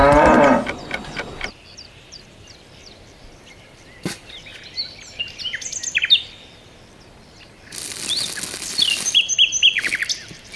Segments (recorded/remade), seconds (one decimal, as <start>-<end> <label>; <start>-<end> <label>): 0.0-1.5 recorded; 1.5-4.5 remade; 4.5-8.7 recorded; 8.7-10.6 remade